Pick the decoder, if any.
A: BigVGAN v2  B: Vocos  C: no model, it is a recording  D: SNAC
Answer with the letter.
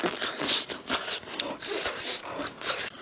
C